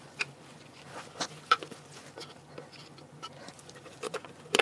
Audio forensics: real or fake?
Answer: fake